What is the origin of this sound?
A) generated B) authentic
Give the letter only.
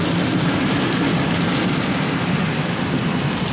B